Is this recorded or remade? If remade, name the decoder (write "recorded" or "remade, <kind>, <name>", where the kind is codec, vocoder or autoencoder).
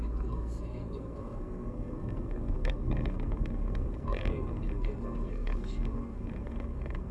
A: remade, codec, SNAC